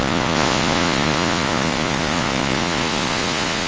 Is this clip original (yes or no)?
no